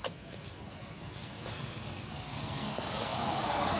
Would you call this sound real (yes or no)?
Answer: no